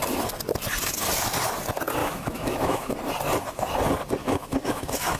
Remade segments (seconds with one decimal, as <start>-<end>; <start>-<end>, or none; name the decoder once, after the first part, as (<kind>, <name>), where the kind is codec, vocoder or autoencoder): 2.0-2.9 (autoencoder, DAC-VAE); 4.2-5.2